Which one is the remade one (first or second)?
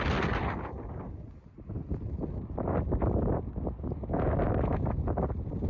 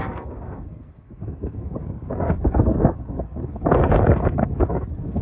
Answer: second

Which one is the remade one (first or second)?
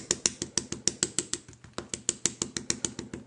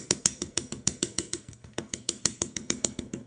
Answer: second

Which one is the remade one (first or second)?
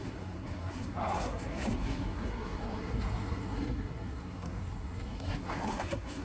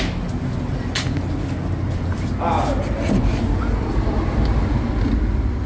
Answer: first